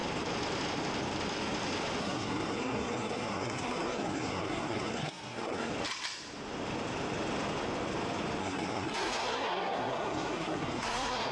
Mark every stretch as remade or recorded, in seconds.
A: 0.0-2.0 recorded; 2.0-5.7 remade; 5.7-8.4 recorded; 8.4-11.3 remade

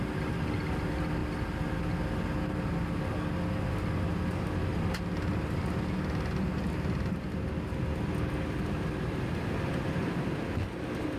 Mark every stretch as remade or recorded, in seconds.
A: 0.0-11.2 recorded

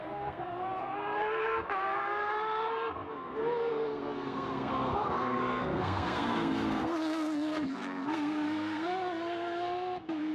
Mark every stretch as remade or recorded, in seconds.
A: 0.0-10.3 remade

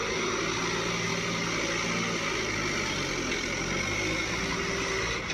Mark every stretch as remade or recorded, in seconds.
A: 0.0-5.3 recorded

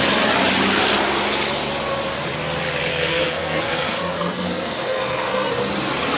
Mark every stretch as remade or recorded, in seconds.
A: 0.0-2.9 recorded; 2.9-5.5 remade; 5.5-6.2 recorded